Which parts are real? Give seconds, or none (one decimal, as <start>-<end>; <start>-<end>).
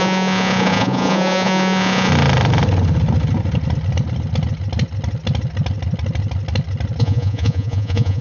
2.1-7.0